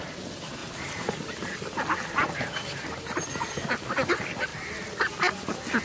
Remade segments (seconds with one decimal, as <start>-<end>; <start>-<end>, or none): 0.0-4.5